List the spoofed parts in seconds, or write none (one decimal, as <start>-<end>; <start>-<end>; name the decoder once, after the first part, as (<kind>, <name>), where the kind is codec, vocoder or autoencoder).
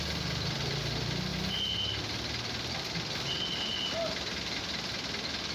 none